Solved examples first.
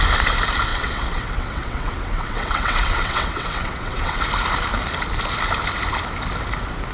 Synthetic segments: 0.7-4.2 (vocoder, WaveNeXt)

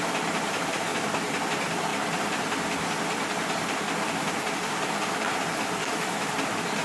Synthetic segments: 5.8-6.3 (autoencoder, DAC-VAE)

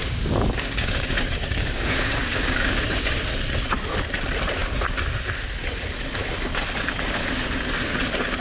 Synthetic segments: 0.0-3.2 (codec, DAC)